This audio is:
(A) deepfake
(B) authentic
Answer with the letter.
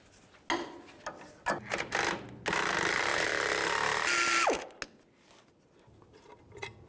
B